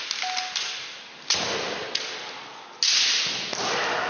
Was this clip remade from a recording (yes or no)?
no